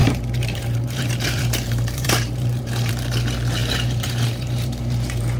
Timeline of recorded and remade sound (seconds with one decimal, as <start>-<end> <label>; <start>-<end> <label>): 0.0-2.9 remade; 2.9-3.6 recorded; 3.6-5.4 remade